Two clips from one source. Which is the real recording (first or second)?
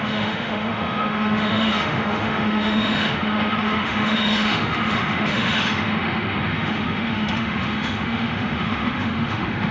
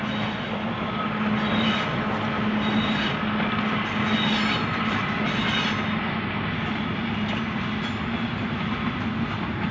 second